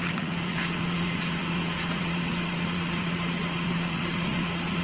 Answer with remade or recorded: remade